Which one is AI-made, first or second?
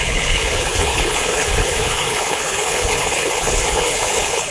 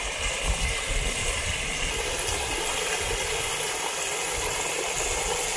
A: first